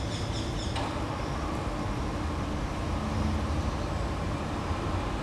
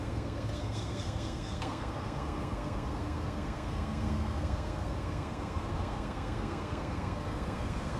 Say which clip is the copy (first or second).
second